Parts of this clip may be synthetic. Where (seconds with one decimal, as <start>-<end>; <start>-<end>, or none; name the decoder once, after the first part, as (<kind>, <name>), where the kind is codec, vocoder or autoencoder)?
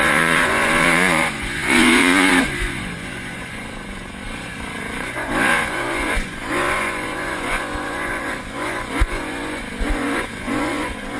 0.0-11.2 (vocoder, Vocos)